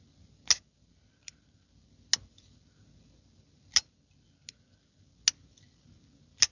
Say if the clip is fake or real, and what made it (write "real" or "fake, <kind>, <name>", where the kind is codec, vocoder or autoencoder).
real